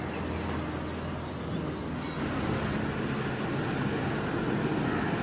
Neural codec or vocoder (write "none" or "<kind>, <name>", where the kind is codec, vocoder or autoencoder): none